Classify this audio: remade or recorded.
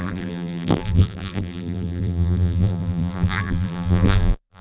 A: remade